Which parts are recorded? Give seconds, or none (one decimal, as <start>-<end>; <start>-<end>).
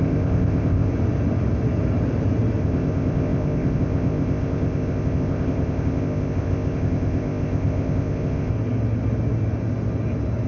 0.9-2.6; 8.5-10.5